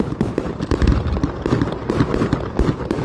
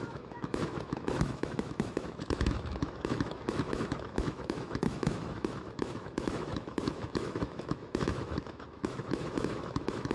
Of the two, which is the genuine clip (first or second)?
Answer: first